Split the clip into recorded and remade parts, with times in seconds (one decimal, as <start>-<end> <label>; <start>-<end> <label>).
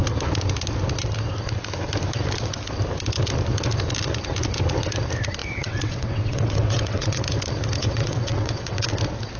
0.0-5.4 recorded; 5.4-7.2 remade; 7.2-7.8 recorded; 7.8-8.9 remade; 8.9-9.4 recorded